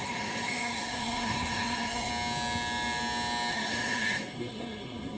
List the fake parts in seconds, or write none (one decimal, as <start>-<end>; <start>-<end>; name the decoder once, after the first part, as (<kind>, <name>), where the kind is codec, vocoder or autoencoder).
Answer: 0.0-2.1 (codec, SNAC); 3.5-5.2

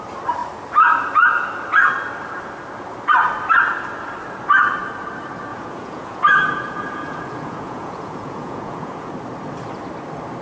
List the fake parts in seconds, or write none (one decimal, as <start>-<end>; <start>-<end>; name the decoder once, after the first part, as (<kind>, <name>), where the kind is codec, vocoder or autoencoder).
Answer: 5.5-9.1 (vocoder, Vocos)

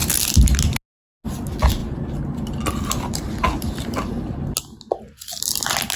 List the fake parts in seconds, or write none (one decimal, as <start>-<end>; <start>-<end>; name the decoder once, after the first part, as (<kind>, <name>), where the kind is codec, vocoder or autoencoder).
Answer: none

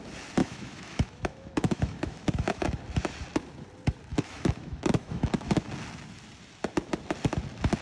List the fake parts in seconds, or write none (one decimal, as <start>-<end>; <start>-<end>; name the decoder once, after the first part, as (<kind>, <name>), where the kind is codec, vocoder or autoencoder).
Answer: 0.4-2.8 (autoencoder, DAC-VAE); 4.1-5.7